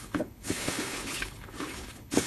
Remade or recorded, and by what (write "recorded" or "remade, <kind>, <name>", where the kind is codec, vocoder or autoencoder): remade, codec, HILCodec